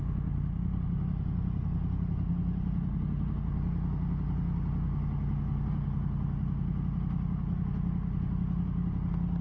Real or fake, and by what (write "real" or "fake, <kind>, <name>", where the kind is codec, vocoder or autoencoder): real